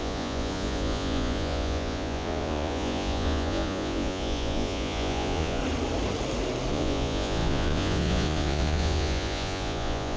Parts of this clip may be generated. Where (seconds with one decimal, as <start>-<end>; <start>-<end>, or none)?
0.0-5.6; 6.7-10.2

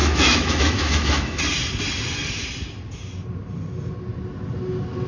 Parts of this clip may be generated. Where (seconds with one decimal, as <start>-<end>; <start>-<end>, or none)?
0.0-1.4

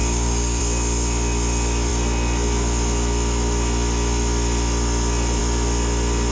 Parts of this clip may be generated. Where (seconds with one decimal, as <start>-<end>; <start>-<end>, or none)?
0.0-0.6

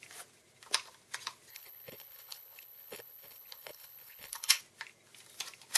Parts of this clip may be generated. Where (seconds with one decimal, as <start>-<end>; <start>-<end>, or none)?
1.5-4.6

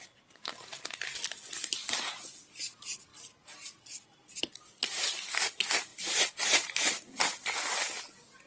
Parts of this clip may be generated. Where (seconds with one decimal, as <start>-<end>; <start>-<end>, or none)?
1.8-2.6; 5.9-6.9

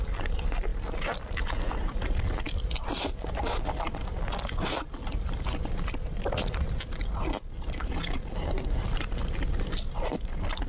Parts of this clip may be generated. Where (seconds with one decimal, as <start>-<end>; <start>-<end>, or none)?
none

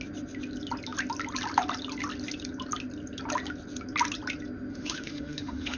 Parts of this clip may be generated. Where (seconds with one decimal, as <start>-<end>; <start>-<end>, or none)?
4.7-5.8

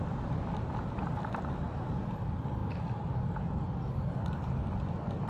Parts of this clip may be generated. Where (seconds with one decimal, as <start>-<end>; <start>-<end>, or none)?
0.0-2.6; 4.2-5.3